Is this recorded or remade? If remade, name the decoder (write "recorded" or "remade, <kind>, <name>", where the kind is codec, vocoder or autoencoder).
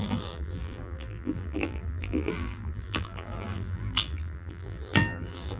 remade, vocoder, BigVGAN v2